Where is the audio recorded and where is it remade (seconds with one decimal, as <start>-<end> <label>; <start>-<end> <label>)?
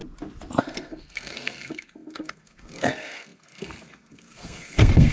0.0-0.6 recorded; 0.6-5.1 remade